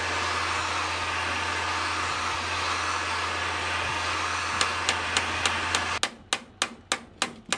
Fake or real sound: real